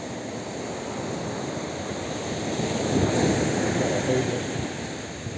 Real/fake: real